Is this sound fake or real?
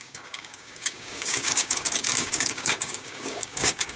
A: fake